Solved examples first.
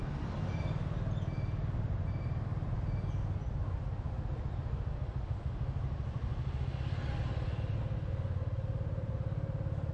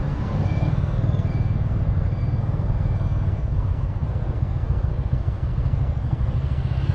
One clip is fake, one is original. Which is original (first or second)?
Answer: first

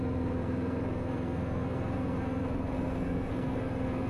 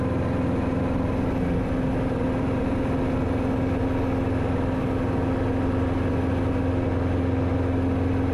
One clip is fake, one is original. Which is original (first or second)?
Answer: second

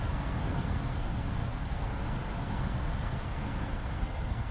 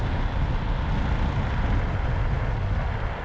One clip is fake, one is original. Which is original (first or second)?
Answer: second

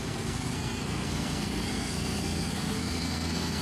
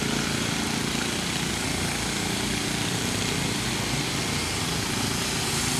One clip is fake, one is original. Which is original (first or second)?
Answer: second